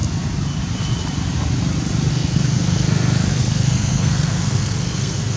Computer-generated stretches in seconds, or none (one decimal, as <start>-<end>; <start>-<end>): 2.1-5.4